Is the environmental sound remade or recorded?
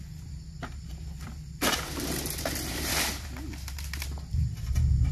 recorded